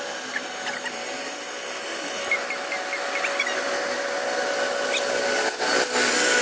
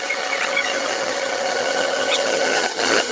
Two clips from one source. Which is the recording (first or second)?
first